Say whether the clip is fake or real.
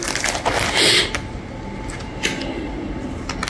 real